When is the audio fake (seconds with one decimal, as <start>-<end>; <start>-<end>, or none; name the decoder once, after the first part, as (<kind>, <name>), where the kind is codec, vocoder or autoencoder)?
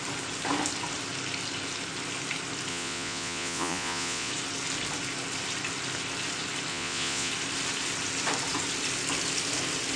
2.7-4.3 (vocoder, Vocos); 6.7-7.3